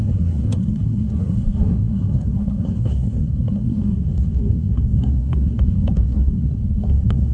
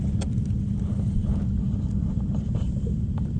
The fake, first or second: first